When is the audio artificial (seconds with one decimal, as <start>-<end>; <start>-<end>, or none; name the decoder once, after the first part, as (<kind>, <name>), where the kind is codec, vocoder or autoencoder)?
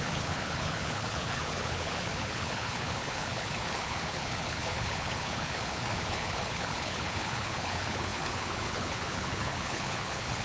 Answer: 0.0-10.4 (codec, HILCodec)